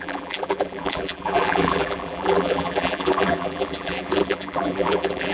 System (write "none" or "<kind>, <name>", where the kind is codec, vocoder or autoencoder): vocoder, BigVGAN v2